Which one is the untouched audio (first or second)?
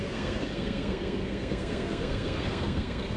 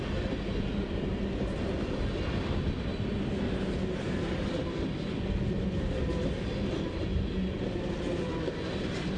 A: second